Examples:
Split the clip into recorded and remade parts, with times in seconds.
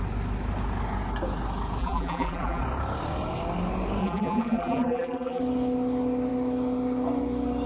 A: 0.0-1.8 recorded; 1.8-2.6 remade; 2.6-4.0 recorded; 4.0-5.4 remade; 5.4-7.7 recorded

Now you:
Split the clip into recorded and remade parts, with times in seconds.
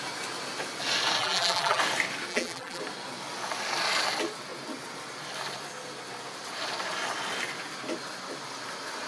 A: 0.0-1.2 recorded; 1.2-1.8 remade; 1.8-2.3 recorded; 2.3-2.8 remade; 2.8-9.1 recorded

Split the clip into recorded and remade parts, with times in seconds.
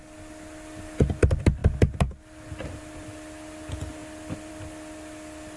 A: 0.0-5.6 recorded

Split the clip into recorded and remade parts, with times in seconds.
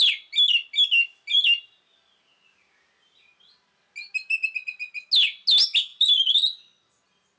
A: 0.0-5.9 recorded; 5.9-7.4 remade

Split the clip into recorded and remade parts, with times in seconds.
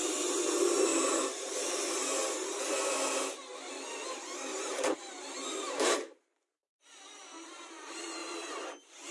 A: 0.0-0.9 recorded; 0.9-2.6 remade; 2.6-4.5 recorded; 4.5-6.8 remade; 6.8-7.3 recorded; 7.3-8.5 remade; 8.5-9.1 recorded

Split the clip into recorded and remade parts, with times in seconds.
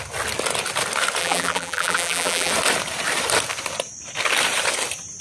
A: 0.0-1.2 recorded; 1.2-2.5 remade; 2.5-5.2 recorded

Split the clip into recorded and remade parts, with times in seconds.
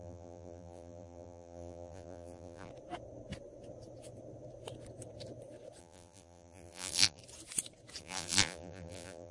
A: 0.0-2.7 remade; 2.7-5.8 recorded; 5.8-7.2 remade; 7.2-8.0 recorded; 8.0-9.3 remade